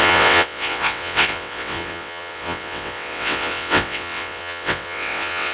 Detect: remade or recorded remade